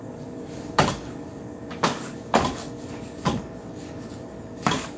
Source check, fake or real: fake